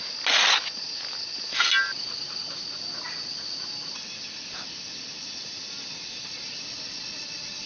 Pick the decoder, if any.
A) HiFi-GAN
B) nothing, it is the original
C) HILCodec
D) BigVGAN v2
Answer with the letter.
B